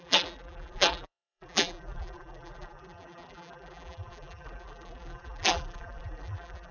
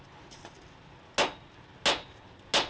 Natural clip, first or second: second